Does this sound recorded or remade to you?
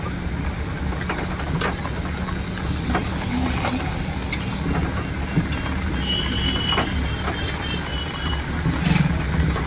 recorded